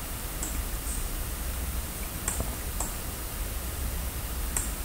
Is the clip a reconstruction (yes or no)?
yes